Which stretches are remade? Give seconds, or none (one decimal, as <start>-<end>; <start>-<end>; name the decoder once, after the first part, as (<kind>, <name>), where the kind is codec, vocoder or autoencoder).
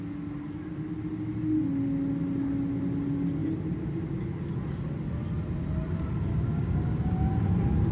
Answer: 6.3-7.2 (codec, DAC)